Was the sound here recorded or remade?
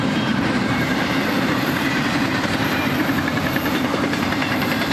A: remade